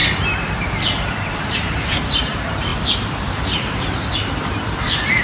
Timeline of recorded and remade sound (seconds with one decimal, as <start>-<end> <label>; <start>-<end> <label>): 0.0-1.5 recorded; 1.5-5.2 remade